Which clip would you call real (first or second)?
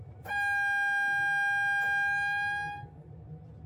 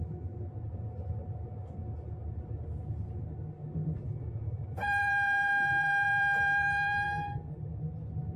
first